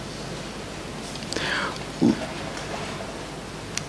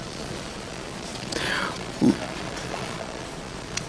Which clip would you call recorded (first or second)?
first